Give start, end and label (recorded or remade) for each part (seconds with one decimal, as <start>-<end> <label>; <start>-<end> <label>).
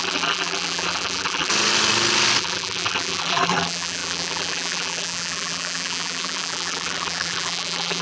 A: 0.0-1.5 remade; 1.5-2.4 recorded; 2.4-8.0 remade